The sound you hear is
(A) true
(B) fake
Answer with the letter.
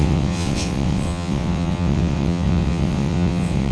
B